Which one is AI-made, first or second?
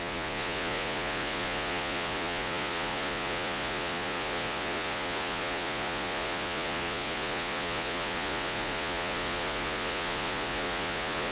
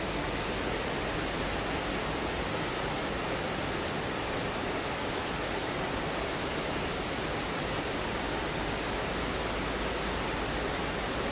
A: first